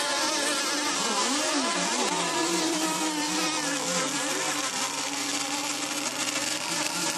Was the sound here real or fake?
real